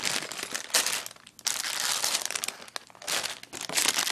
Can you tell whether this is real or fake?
real